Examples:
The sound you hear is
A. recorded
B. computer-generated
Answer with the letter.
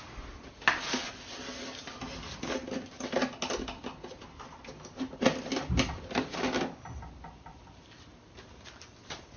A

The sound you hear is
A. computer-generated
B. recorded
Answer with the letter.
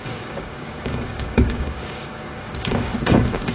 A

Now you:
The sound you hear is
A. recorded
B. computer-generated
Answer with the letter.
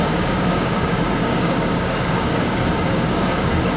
B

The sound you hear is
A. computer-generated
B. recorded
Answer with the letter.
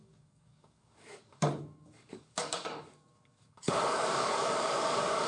A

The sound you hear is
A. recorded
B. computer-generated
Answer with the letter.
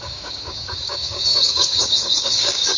B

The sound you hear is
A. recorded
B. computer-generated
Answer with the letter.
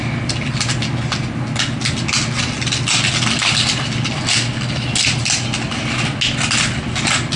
A